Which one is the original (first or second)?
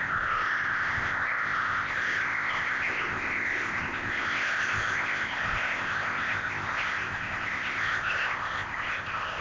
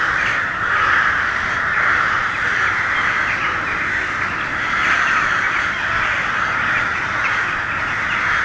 second